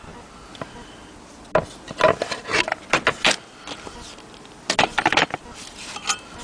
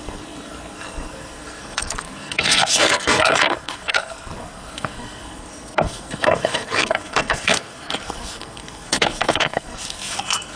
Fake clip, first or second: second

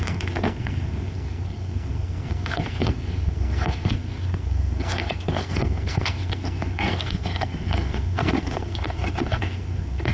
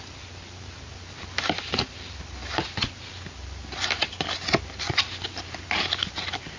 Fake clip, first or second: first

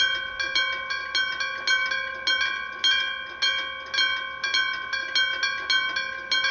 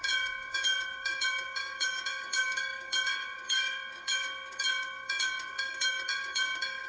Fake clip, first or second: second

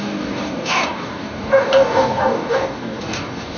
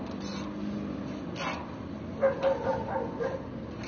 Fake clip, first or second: first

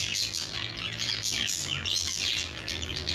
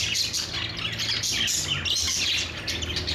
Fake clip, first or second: first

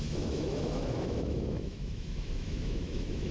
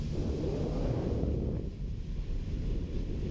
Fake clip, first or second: first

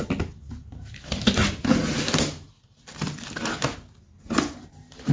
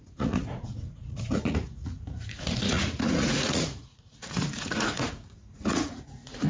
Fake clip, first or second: second